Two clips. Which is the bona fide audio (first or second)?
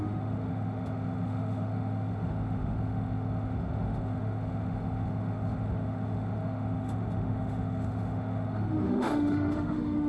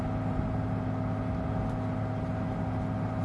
second